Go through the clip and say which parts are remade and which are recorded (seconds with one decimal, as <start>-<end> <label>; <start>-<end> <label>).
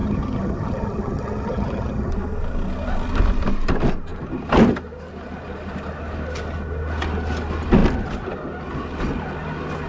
0.0-2.1 remade; 2.1-9.9 recorded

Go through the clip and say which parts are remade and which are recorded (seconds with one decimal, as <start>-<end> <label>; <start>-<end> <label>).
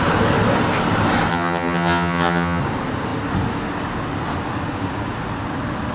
0.0-1.3 recorded; 1.3-2.6 remade; 2.6-5.9 recorded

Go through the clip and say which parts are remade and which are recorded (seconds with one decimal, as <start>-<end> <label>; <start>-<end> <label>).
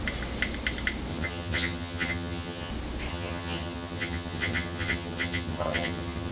0.0-1.1 recorded; 1.1-2.7 remade; 2.7-3.1 recorded; 3.1-6.3 remade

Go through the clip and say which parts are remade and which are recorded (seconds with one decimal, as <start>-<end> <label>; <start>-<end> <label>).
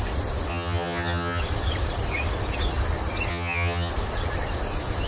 0.0-0.5 recorded; 0.5-1.4 remade; 1.4-3.3 recorded; 3.3-3.9 remade; 3.9-5.1 recorded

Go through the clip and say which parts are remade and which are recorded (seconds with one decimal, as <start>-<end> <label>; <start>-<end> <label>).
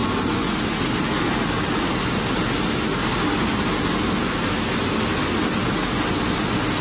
0.0-6.8 recorded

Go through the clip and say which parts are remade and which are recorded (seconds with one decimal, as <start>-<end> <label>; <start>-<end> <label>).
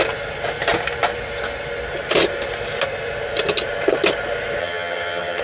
0.0-4.6 recorded; 4.6-5.4 remade